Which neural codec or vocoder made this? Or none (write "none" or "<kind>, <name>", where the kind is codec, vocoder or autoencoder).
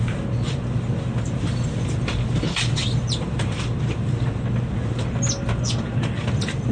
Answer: none